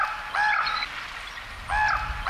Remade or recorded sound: recorded